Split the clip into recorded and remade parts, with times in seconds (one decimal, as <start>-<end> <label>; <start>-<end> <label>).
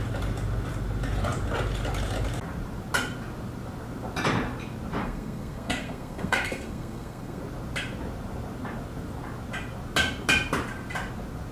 0.0-5.0 recorded; 5.0-7.4 remade; 7.4-11.5 recorded